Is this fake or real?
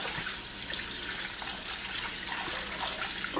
real